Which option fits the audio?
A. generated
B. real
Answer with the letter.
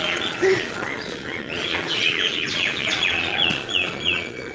A